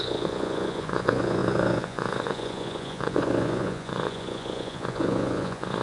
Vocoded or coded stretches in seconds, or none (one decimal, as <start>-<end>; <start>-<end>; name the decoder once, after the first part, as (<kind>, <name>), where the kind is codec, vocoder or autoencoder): 0.0-5.8 (vocoder, Vocos)